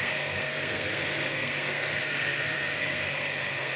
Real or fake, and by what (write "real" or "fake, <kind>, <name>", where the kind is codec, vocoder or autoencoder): fake, codec, SNAC